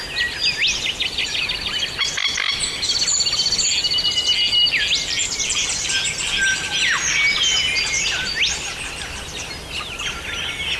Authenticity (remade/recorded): recorded